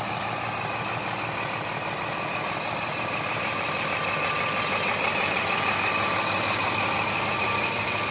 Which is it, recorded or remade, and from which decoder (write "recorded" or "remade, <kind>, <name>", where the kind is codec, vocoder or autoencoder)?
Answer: recorded